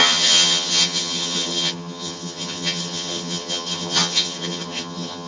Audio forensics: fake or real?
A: fake